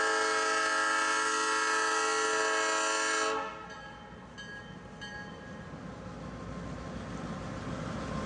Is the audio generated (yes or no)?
no